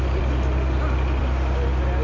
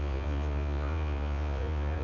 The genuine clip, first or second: first